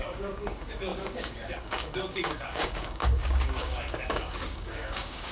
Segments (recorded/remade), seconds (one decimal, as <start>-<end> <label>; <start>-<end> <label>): 0.0-5.3 remade